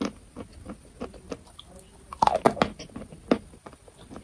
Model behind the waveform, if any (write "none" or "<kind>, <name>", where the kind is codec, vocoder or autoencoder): none